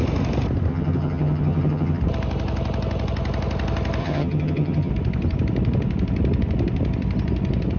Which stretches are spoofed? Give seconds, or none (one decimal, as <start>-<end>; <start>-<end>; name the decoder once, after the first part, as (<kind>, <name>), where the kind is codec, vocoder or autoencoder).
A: 0.7-2.0 (vocoder, HiFi-GAN); 4.0-4.9